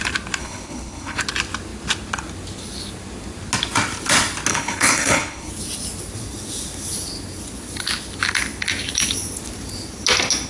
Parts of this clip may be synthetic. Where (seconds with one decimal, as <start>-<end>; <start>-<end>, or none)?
0.4-1.2; 4.5-5.5